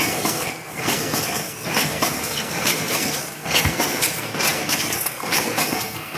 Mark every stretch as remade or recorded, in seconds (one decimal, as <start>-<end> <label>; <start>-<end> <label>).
0.0-6.2 remade